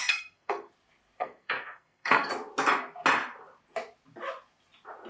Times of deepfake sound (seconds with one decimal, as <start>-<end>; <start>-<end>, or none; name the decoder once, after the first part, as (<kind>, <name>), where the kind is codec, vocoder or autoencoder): 0.0-0.7 (codec, SNAC); 1.2-2.3